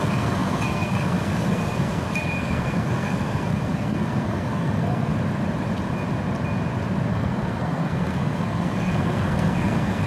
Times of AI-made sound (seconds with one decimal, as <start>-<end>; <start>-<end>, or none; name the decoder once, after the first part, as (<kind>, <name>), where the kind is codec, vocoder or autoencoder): 0.0-5.1 (codec, SNAC); 7.1-10.1

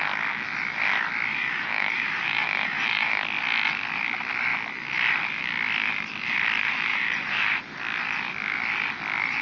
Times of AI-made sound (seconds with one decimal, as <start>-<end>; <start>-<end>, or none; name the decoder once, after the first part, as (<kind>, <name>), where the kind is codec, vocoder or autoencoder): 1.3-3.2 (vocoder, BigVGAN v2); 6.9-7.6

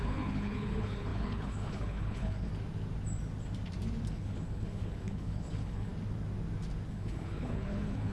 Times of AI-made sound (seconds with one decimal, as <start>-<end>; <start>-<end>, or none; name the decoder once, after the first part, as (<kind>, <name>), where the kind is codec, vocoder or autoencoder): 0.0-2.5 (codec, HILCodec); 4.1-5.9; 6.9-8.1

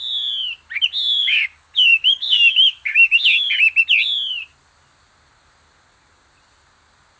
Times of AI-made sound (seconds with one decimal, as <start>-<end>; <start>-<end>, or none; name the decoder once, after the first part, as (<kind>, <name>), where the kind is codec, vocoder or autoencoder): 1.2-3.5 (codec, DAC)

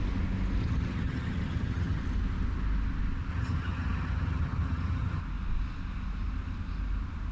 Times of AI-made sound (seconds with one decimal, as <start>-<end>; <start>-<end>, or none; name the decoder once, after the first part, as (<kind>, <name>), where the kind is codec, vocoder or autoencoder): 0.6-2.0 (vocoder, HiFi-GAN); 3.3-5.2

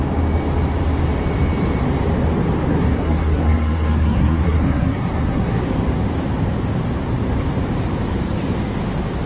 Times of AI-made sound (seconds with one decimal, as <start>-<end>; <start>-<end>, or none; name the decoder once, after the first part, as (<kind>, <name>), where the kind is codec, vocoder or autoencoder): 2.7-5.6 (codec, SNAC)

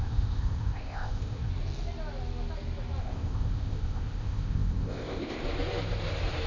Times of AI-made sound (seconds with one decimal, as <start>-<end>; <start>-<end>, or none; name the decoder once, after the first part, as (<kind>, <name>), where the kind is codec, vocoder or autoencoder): 0.0-1.5 (codec, ZipCodec); 3.0-5.4

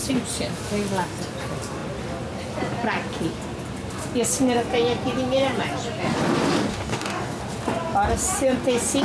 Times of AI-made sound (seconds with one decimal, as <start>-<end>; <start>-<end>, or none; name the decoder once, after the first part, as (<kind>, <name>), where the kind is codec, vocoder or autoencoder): 6.7-7.4 (codec, DAC)